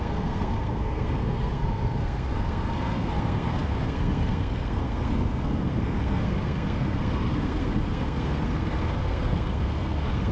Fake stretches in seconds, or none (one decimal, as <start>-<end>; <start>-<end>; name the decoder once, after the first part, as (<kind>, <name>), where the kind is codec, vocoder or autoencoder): 0.0-10.3 (codec, SNAC)